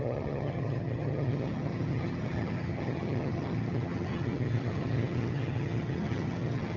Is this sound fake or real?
fake